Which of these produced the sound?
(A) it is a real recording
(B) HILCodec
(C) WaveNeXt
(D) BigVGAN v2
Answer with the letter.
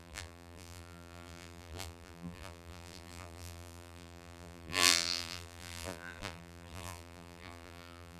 D